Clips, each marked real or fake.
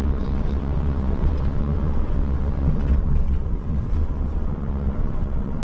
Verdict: fake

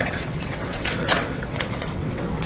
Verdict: fake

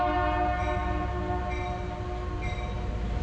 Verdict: real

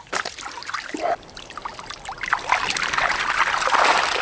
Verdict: real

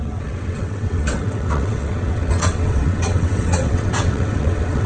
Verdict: fake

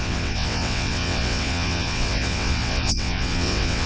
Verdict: fake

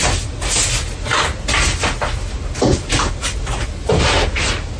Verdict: real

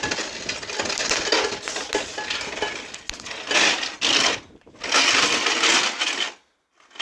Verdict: real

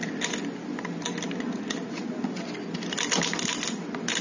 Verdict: real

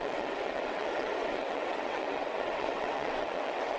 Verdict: fake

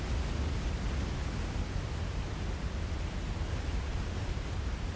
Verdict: real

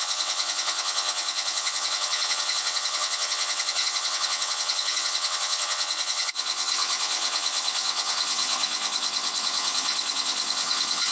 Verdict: fake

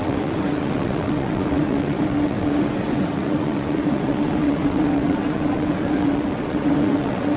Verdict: fake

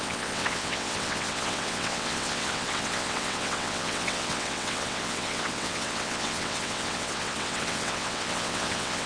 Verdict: fake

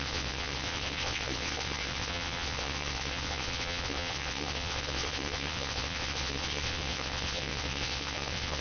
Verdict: fake